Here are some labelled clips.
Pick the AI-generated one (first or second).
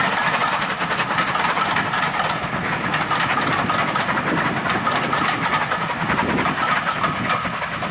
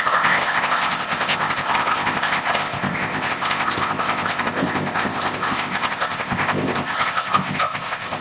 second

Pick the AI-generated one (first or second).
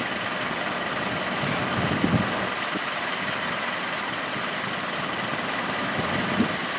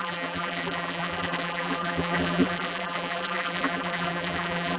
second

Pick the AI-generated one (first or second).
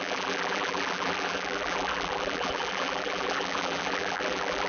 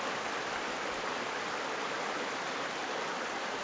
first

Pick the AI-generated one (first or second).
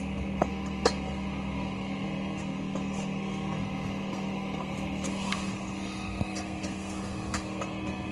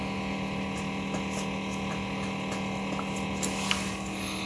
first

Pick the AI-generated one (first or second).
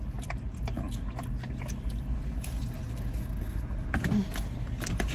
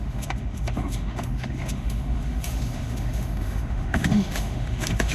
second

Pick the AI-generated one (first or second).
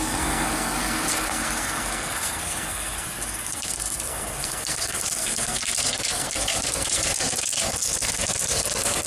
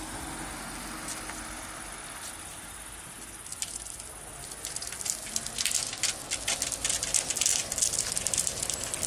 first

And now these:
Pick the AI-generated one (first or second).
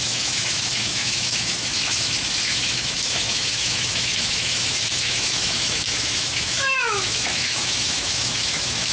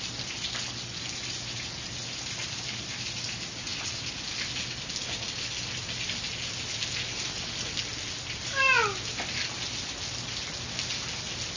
first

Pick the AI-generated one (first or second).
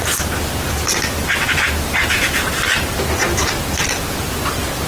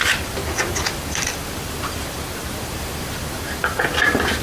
second